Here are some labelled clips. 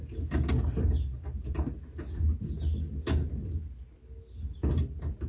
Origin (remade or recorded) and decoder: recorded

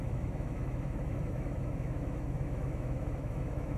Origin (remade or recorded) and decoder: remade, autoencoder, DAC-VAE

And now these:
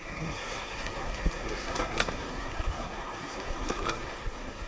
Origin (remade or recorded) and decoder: remade, codec, SNAC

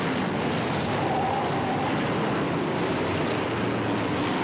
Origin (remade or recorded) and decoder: recorded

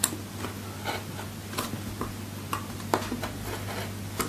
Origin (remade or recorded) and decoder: recorded